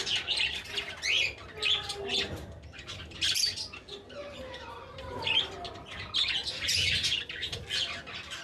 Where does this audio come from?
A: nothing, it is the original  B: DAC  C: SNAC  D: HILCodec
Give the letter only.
A